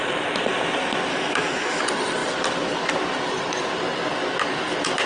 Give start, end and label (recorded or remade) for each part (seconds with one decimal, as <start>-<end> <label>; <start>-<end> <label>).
0.0-1.1 recorded; 1.1-1.8 remade; 1.8-5.1 recorded